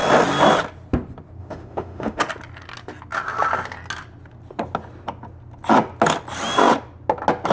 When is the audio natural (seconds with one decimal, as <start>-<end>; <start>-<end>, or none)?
0.0-1.4; 2.2-7.5